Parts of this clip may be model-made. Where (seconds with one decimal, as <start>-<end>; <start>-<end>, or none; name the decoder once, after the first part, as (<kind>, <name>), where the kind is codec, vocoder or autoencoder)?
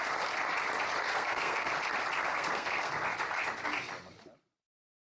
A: 1.1-1.7 (codec, SNAC); 2.3-2.9